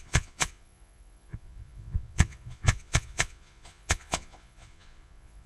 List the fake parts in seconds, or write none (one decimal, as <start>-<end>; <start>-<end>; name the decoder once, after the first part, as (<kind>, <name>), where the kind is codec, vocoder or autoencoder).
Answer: 0.0-5.5 (vocoder, Vocos)